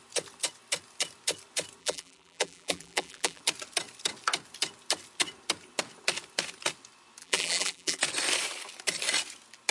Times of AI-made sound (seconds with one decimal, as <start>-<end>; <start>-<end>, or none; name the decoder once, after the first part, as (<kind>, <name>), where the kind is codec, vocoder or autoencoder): 1.8-3.4 (vocoder, BigVGAN v2); 7.2-8.0

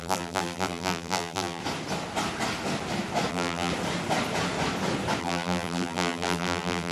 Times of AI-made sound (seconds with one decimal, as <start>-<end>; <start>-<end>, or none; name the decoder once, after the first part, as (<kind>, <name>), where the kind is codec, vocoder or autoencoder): 0.0-1.6 (vocoder, BigVGAN v2); 3.3-3.7; 5.2-6.9

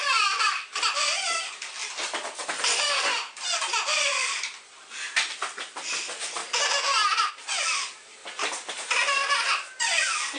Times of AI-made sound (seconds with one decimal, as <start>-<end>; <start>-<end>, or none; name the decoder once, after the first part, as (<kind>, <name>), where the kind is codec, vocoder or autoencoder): 0.0-6.4 (vocoder, BigVGAN v2); 7.3-8.2; 8.7-10.4

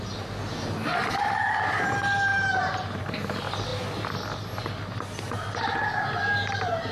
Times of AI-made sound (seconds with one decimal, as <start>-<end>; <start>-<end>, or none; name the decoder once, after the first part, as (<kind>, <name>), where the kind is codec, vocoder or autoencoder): 0.9-1.9 (vocoder, BigVGAN v2); 2.3-3.0

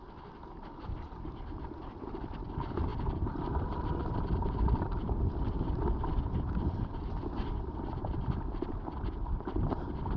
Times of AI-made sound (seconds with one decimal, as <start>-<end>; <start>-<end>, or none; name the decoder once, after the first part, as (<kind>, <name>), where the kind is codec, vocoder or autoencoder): 0.0-10.2 (vocoder, BigVGAN v2)

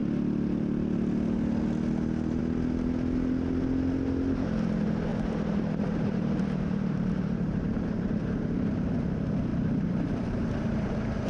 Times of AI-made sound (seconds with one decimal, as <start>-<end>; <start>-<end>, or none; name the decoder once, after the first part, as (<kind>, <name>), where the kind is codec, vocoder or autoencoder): 5.1-8.9 (vocoder, BigVGAN v2); 9.5-11.3

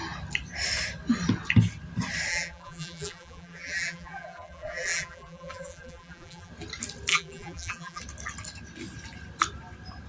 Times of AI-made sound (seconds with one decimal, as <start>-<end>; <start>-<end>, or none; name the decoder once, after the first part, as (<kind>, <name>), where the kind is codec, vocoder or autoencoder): 2.3-6.5 (vocoder, BigVGAN v2); 7.1-8.0